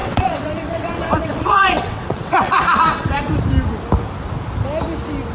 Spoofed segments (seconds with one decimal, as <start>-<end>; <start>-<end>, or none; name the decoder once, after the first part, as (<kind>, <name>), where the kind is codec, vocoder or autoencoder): 0.0-3.2 (vocoder, WaveNeXt)